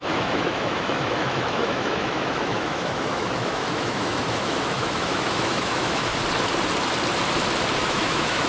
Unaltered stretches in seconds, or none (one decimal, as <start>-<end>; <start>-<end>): 6.1-7.8